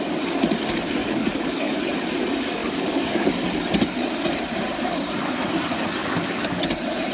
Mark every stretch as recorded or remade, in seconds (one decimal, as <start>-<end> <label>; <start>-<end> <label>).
0.0-1.0 recorded; 1.0-1.8 remade; 1.8-2.6 recorded; 2.6-3.3 remade; 3.3-6.0 recorded; 6.0-6.6 remade; 6.6-7.1 recorded